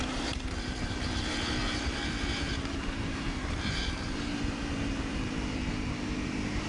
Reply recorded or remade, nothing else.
remade